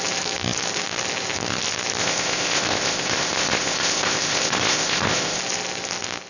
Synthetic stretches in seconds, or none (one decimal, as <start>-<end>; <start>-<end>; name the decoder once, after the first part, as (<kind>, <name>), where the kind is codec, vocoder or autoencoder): 2.0-5.4 (codec, ZipCodec)